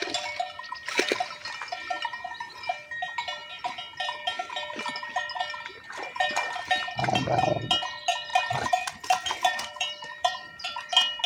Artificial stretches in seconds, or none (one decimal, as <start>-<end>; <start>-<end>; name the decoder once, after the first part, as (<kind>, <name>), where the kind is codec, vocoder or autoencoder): 8.3-10.9 (vocoder, BigVGAN v2)